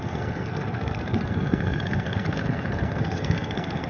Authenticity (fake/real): fake